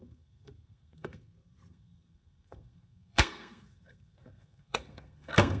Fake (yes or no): yes